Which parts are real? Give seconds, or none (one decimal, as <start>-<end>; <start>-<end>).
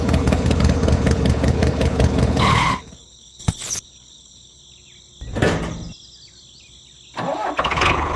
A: 4.6-7.6